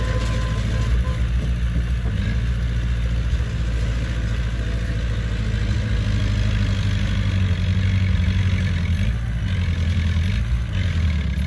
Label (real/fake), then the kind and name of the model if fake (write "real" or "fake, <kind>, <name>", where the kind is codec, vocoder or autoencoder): real